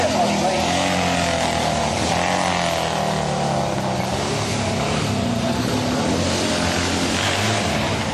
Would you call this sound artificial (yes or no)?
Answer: no